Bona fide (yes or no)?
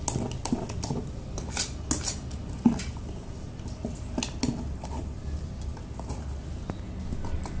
yes